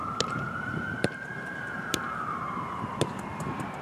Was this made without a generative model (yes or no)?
no